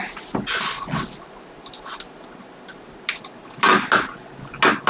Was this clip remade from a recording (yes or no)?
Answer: no